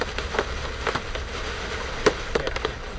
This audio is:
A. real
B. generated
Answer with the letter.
A